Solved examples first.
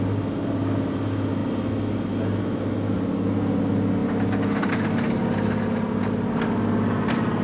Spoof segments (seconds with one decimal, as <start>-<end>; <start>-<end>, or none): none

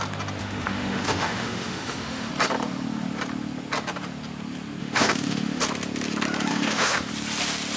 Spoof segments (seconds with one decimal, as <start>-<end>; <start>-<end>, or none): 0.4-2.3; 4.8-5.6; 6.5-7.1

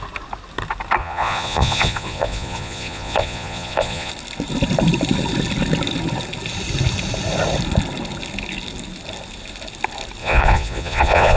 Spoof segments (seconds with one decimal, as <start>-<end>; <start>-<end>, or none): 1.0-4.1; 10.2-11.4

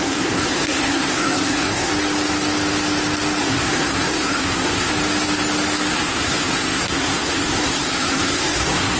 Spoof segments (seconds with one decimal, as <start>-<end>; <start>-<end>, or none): 0.0-1.9; 3.4-4.9; 5.9-9.0

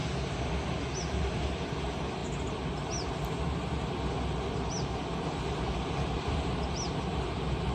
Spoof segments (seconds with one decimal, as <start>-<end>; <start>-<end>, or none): 1.2-2.2; 4.5-7.7

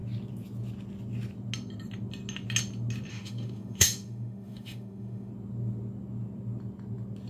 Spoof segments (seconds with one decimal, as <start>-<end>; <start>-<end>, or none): 3.1-5.3